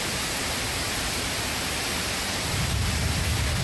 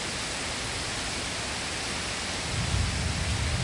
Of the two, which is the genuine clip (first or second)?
second